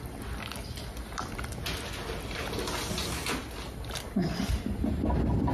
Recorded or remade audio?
recorded